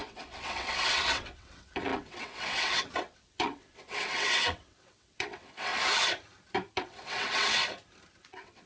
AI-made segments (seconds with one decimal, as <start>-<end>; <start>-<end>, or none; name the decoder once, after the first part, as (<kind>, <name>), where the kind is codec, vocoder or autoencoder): 0.0-5.7 (vocoder, WaveNeXt); 6.8-7.6; 8.2-8.7